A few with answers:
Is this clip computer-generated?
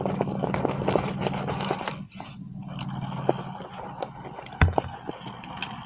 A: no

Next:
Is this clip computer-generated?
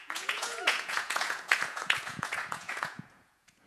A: yes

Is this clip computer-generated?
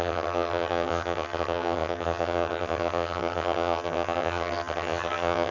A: yes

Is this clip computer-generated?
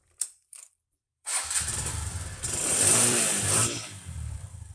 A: yes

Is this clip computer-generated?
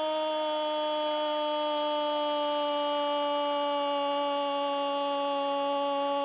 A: no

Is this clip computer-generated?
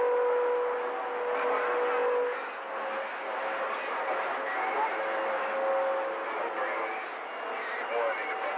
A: no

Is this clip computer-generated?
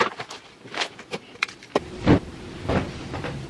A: yes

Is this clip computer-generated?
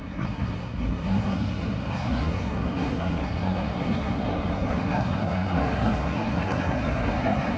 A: yes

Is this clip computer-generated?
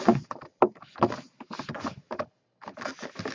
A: no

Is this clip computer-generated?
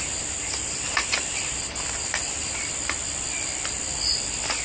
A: no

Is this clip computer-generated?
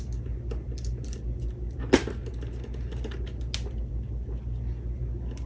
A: no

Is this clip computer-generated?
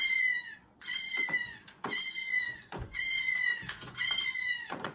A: yes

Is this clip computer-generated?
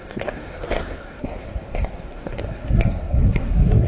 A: yes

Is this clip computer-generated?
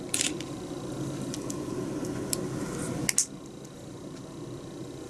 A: no